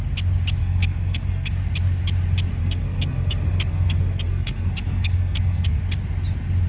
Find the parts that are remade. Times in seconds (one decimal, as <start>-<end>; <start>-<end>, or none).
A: 0.6-1.5; 2.6-5.8